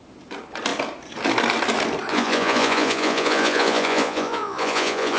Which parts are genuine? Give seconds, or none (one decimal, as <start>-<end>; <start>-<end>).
0.0-2.1